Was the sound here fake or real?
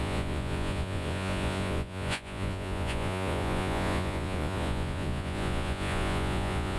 fake